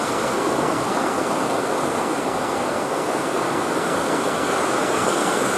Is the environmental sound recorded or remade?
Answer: remade